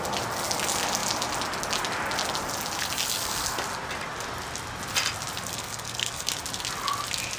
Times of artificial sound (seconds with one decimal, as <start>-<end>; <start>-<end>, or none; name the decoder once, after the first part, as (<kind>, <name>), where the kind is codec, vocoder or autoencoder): 5.5-6.3 (codec, SNAC)